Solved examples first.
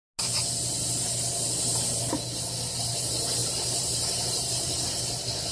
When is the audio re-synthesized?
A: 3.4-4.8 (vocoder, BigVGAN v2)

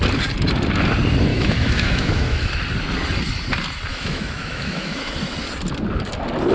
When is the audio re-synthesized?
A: 1.3-2.5 (autoencoder, DAC-VAE); 3.9-5.1

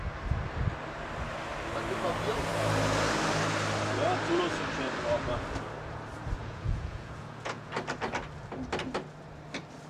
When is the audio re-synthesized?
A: 6.4-7.7 (vocoder, Vocos)